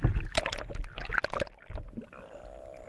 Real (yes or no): yes